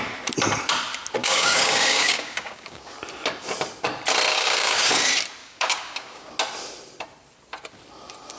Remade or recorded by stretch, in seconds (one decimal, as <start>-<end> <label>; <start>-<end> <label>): 0.0-1.2 recorded; 1.2-2.9 remade; 2.9-4.3 recorded; 4.3-4.9 remade; 4.9-5.4 recorded; 5.4-6.3 remade; 6.3-8.4 recorded